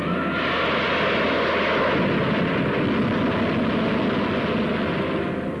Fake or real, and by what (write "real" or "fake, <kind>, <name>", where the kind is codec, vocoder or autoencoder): real